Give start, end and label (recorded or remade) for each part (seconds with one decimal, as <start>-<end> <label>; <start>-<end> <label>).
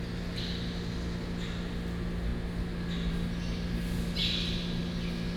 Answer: 0.0-5.4 recorded